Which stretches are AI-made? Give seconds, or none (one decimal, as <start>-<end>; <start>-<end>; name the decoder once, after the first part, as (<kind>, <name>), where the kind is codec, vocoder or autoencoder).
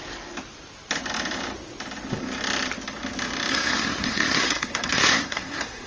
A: 3.5-5.9 (codec, SNAC)